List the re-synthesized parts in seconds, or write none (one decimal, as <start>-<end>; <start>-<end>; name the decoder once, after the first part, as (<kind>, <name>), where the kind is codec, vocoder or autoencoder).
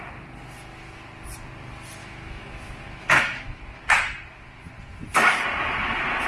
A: 2.0-3.8 (autoencoder, DAC-VAE)